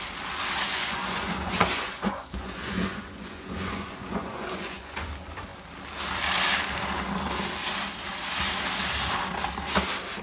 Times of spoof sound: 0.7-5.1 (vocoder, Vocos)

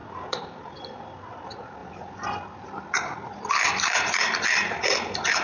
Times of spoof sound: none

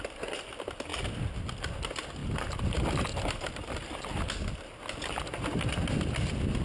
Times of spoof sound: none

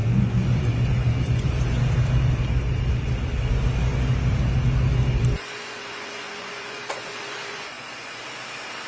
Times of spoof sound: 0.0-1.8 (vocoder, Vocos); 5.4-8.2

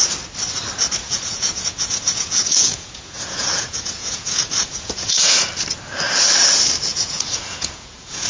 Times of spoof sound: 1.0-5.5 (vocoder, Vocos); 6.9-8.3